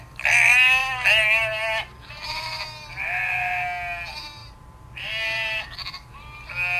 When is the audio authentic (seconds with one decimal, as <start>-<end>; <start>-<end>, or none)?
0.0-4.4; 5.6-6.8